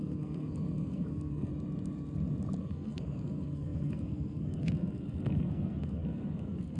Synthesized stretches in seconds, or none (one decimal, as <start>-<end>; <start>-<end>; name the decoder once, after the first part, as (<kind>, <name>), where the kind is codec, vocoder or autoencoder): 0.0-1.5 (codec, SNAC); 2.6-6.8